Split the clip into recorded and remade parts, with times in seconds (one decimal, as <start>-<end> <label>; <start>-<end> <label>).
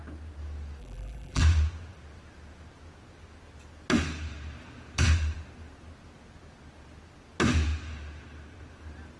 0.0-0.8 recorded; 0.8-1.4 remade; 1.4-9.2 recorded